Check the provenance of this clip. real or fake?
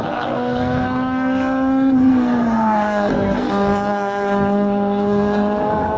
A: fake